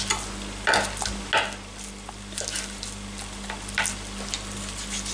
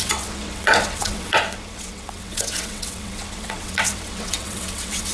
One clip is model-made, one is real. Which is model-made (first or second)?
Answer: second